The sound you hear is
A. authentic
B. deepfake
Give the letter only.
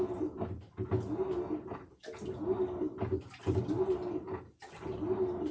A